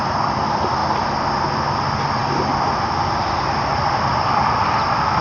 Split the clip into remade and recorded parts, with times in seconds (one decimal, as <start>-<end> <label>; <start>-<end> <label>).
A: 0.0-5.2 recorded